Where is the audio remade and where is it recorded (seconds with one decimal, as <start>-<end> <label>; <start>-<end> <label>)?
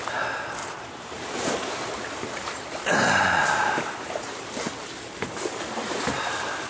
0.0-0.6 recorded; 0.6-4.3 remade; 4.3-6.7 recorded